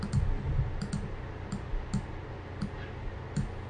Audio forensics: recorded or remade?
recorded